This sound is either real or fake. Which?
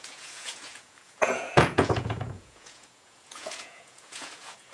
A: fake